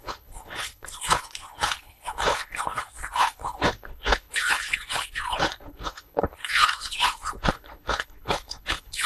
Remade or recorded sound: remade